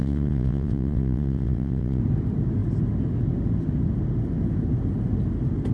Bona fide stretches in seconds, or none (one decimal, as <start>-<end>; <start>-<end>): 2.0-5.7